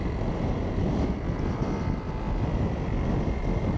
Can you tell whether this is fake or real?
real